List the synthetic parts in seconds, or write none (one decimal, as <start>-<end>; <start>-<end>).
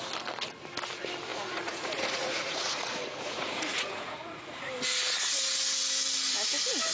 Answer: 1.3-4.7